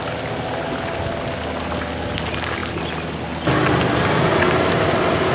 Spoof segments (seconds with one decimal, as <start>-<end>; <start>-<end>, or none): none